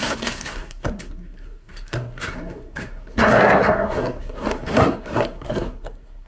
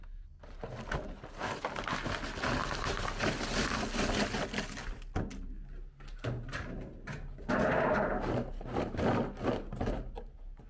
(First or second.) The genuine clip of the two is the second